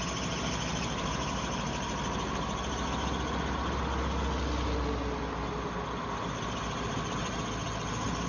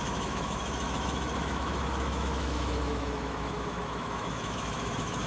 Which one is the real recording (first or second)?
first